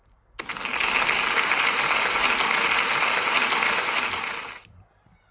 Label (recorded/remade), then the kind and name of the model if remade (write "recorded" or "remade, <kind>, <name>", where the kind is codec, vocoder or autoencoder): recorded